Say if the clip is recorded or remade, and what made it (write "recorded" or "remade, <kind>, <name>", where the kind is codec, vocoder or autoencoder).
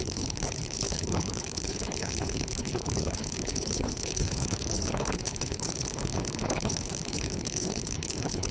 remade, codec, HILCodec